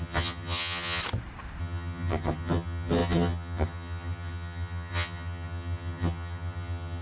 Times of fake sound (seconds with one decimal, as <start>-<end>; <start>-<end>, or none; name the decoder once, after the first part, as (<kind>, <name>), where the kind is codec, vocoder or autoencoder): 0.0-1.0 (vocoder, HiFi-GAN); 1.6-7.0